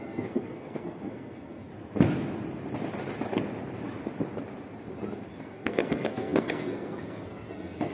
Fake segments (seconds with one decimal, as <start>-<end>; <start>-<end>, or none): 0.0-1.7; 5.4-7.9